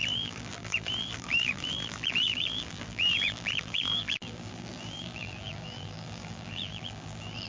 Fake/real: fake